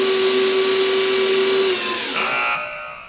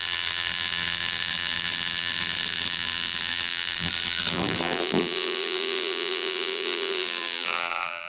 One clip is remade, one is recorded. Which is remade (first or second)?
second